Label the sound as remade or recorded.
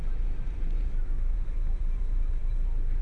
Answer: remade